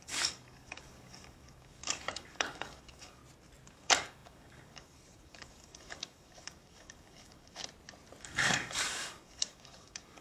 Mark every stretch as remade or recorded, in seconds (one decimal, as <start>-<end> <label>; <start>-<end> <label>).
0.0-3.2 remade; 3.2-3.7 recorded; 3.7-7.6 remade; 7.6-8.2 recorded; 8.2-10.2 remade